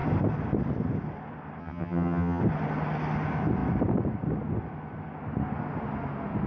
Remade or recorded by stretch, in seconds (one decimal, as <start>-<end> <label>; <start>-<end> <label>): 0.0-1.6 recorded; 1.6-2.4 remade; 2.4-6.5 recorded